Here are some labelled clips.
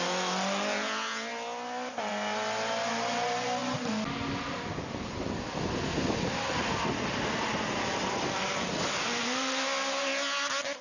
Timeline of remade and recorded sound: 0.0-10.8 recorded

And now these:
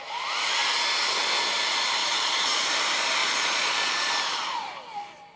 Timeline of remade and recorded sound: 0.0-2.0 recorded; 2.0-2.7 remade; 2.7-3.2 recorded; 3.2-4.1 remade; 4.1-5.4 recorded

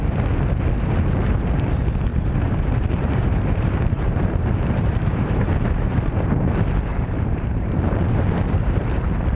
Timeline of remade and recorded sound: 0.0-2.1 recorded; 2.1-6.5 remade; 6.5-6.9 recorded; 6.9-8.8 remade; 8.8-9.3 recorded

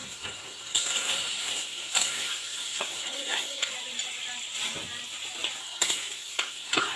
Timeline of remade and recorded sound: 0.0-3.7 remade; 3.7-5.6 recorded; 5.6-7.0 remade

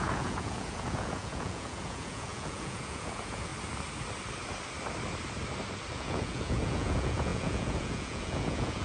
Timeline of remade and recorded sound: 0.0-3.5 remade; 3.5-5.9 recorded; 5.9-8.8 remade